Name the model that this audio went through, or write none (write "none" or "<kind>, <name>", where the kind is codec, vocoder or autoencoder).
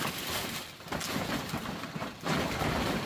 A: none